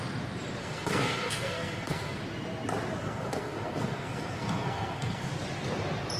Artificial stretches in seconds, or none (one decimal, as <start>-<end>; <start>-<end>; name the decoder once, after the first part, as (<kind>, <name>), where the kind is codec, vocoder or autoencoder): 0.6-2.2 (codec, SNAC); 3.0-5.3